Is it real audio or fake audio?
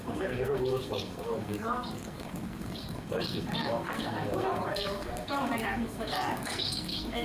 fake